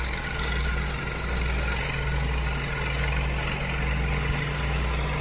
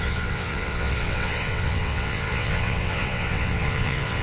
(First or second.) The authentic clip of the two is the first